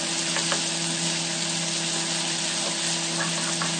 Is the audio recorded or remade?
recorded